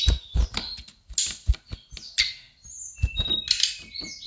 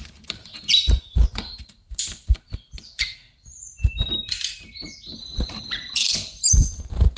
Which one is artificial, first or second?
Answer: second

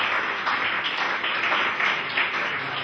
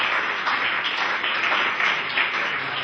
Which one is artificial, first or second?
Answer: second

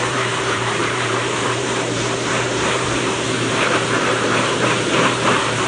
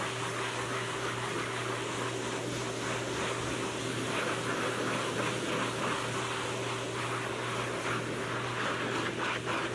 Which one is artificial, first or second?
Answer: first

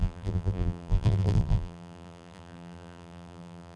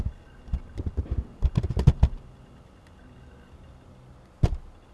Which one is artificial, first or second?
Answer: first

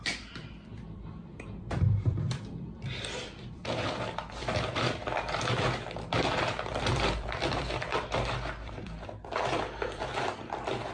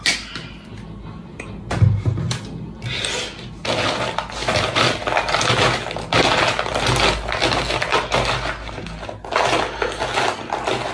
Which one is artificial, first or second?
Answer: first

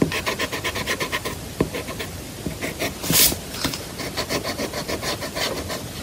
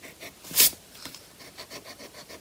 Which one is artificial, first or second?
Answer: first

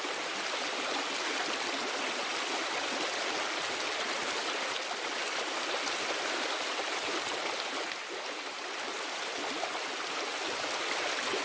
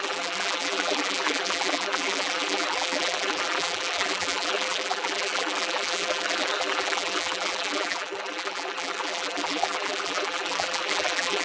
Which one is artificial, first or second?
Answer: second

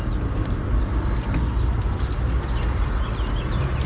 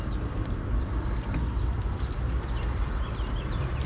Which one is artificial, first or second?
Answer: second